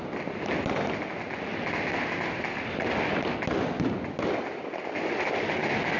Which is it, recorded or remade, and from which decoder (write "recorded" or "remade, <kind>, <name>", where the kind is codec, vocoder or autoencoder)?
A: recorded